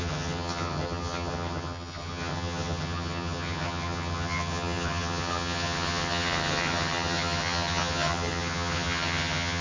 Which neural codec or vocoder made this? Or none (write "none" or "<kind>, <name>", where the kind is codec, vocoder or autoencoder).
vocoder, HiFi-GAN